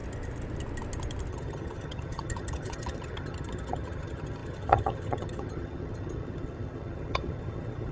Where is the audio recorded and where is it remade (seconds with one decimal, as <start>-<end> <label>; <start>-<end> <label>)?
0.0-1.3 recorded; 1.3-7.9 remade

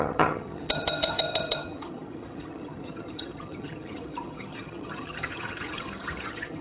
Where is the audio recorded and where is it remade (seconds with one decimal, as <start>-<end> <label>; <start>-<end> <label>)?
0.0-6.6 remade

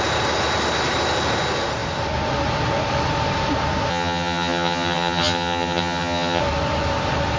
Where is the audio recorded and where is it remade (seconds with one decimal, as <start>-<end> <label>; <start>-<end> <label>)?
0.0-3.9 recorded; 3.9-6.4 remade; 6.4-7.4 recorded

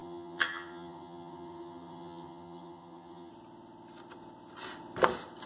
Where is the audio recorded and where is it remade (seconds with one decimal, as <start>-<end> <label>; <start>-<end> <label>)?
0.0-3.3 remade; 3.3-5.5 recorded

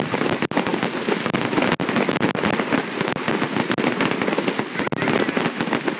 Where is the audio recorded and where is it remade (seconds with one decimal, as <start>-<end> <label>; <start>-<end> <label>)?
0.0-6.0 recorded

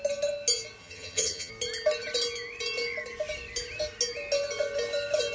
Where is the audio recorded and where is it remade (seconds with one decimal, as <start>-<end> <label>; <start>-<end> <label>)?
0.0-0.8 recorded; 0.8-1.5 remade; 1.5-5.3 recorded

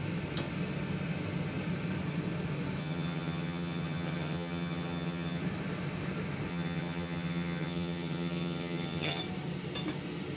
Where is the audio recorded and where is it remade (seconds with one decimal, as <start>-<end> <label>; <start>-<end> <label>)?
0.0-2.8 recorded; 2.8-5.4 remade; 5.4-6.5 recorded; 6.5-9.2 remade; 9.2-10.4 recorded